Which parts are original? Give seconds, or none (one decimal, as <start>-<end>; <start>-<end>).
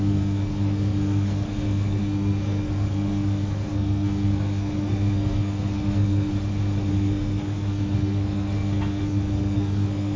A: 6.3-6.9